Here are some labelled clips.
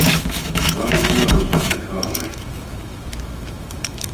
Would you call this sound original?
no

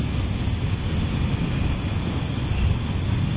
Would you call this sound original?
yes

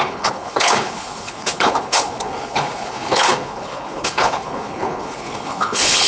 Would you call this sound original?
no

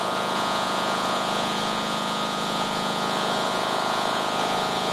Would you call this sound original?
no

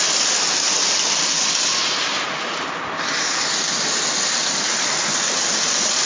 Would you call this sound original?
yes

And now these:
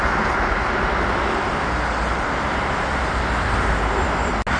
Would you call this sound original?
yes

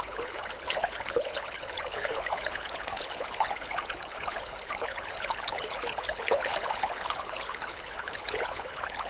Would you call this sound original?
no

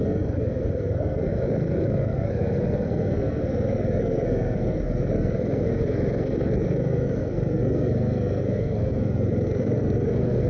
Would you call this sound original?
no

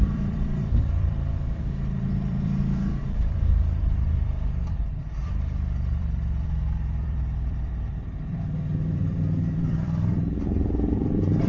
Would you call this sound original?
no